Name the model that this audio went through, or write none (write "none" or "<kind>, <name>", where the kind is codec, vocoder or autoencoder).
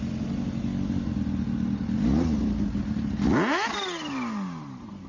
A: none